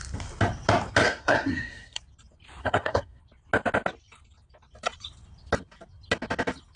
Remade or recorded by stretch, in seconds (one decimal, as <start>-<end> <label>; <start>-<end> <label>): 0.0-1.0 recorded; 1.0-2.0 remade; 2.0-2.6 recorded; 2.6-3.2 remade; 3.2-6.8 recorded

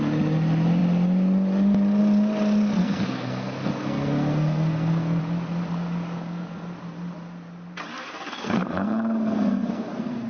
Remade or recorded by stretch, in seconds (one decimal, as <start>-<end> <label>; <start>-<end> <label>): 0.0-2.8 recorded; 2.8-5.2 remade; 5.2-7.9 recorded; 7.9-10.3 remade

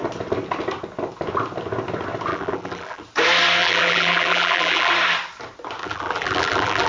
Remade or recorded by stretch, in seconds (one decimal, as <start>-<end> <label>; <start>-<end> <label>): 0.0-2.3 recorded; 2.3-3.0 remade; 3.0-3.6 recorded; 3.6-4.9 remade; 4.9-5.8 recorded; 5.8-6.9 remade

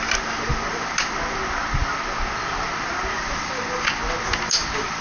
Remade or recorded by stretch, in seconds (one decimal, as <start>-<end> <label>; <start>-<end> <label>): 0.0-5.0 recorded

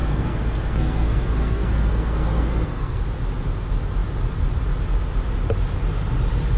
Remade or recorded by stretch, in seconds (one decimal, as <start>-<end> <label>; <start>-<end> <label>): 0.0-3.0 remade; 3.0-6.6 recorded

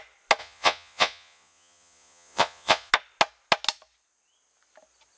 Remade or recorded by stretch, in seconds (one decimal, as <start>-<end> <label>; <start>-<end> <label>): 0.0-0.4 recorded; 0.4-2.9 remade; 2.9-5.2 recorded